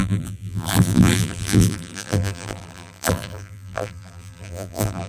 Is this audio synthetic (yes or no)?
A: yes